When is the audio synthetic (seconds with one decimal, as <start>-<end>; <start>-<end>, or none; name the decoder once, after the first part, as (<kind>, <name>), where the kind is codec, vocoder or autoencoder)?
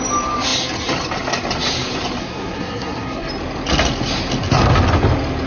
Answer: 2.2-3.3 (codec, SNAC)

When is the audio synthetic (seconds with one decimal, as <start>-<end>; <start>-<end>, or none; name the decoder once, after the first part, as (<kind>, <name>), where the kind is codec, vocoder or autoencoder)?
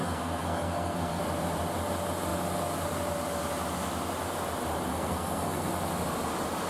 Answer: 0.0-1.2 (codec, SNAC); 4.9-5.7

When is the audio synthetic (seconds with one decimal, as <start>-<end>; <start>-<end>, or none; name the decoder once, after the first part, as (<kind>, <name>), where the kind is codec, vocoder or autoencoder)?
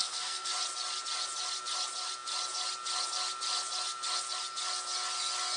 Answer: 0.0-0.5 (codec, SNAC)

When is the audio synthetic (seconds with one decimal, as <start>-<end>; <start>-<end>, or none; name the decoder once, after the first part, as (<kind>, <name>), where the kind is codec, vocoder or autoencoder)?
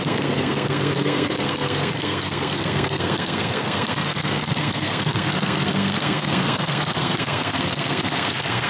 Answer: 0.0-8.7 (codec, SNAC)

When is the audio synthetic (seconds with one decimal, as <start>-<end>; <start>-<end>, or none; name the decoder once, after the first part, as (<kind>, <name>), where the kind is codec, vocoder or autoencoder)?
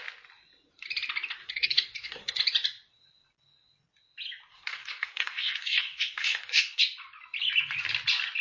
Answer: 1.4-2.4 (codec, SNAC); 4.5-6.8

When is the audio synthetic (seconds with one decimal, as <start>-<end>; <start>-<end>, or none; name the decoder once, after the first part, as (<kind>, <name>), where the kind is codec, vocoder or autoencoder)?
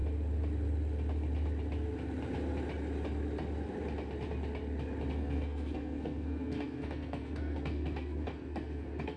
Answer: 5.1-9.2 (codec, SNAC)